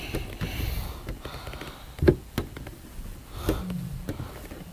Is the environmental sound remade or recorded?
recorded